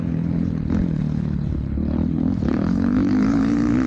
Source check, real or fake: fake